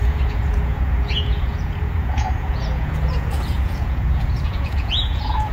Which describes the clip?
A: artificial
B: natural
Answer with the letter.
A